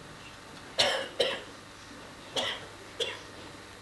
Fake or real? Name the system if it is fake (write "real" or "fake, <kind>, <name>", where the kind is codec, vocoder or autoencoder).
real